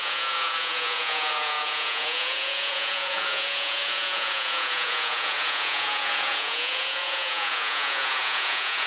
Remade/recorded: remade